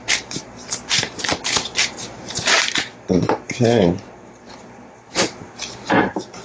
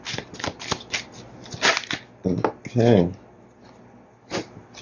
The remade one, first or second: first